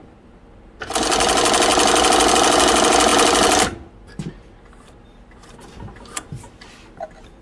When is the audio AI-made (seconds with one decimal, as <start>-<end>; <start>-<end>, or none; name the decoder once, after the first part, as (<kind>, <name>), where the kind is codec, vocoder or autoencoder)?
none